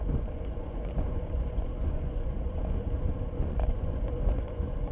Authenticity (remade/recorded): remade